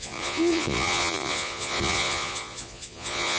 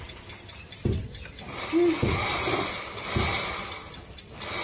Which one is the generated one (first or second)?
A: first